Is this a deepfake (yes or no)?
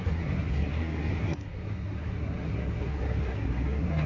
yes